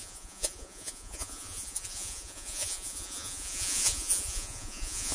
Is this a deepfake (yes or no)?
yes